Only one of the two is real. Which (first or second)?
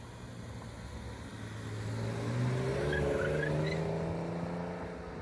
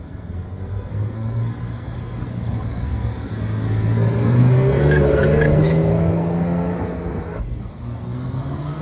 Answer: first